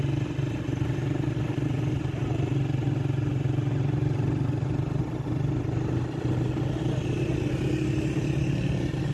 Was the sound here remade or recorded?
recorded